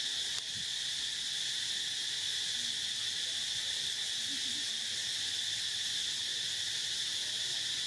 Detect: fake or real real